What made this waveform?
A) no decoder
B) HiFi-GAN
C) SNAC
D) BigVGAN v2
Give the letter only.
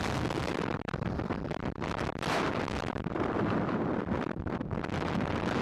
D